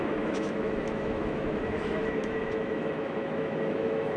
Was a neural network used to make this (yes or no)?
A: yes